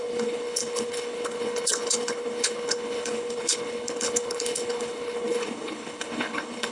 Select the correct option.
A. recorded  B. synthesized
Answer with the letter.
B